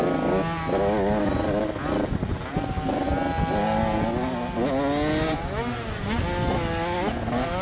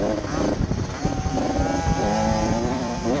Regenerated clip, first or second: second